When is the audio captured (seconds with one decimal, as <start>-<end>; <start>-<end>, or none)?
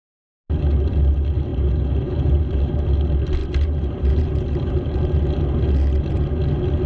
0.0-1.5; 2.8-3.4; 5.2-6.9